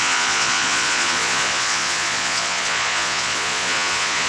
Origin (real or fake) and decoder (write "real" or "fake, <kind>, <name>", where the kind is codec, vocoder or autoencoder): fake, vocoder, Vocos